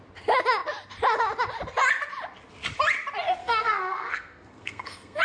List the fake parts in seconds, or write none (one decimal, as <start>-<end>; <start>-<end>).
3.4-5.2